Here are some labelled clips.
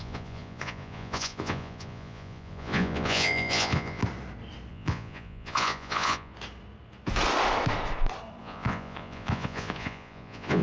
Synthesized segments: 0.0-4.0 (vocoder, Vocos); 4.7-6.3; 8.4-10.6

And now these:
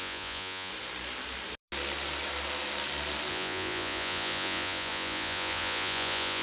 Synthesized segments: 0.0-0.7 (vocoder, Vocos); 3.3-6.4

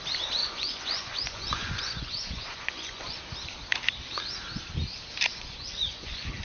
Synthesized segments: 0.4-3.2 (vocoder, Vocos); 5.3-6.4

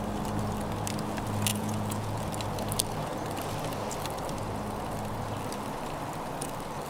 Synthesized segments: 1.5-2.2 (vocoder, Vocos)

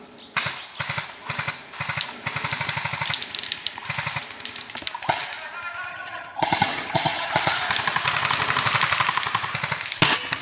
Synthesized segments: 5.9-7.3 (vocoder, HiFi-GAN)

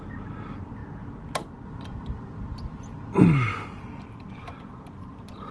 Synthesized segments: none

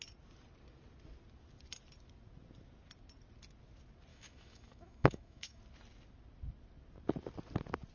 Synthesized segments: 4.1-5.6 (autoencoder, DAC-VAE)

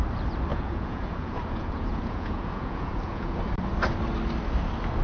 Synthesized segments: 0.5-3.4 (vocoder, Vocos)